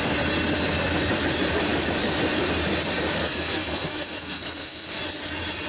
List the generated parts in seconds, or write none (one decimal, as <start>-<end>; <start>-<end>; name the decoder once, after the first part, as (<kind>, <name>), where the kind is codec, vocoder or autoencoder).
3.2-5.0 (codec, SNAC)